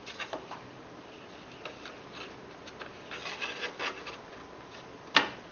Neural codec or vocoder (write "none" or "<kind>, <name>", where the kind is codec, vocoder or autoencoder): none